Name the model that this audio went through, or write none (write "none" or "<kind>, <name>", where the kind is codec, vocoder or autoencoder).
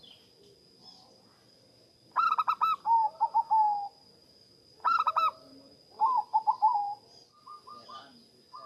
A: none